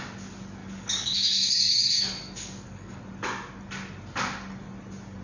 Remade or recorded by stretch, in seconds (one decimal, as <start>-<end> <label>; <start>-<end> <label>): 0.0-0.6 recorded; 0.6-3.0 remade; 3.0-5.2 recorded